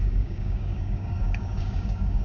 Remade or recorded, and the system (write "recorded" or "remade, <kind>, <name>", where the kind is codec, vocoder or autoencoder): remade, codec, DAC